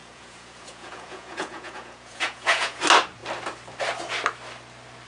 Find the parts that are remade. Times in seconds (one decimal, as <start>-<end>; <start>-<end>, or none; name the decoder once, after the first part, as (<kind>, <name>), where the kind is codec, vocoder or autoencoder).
0.0-2.8 (vocoder, Vocos)